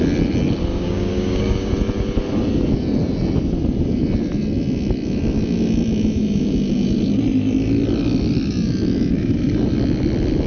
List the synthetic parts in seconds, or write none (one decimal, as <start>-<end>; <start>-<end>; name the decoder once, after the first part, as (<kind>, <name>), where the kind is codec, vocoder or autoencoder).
0.7-1.7 (codec, DAC)